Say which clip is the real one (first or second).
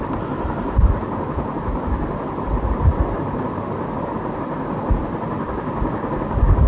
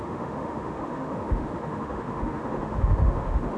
first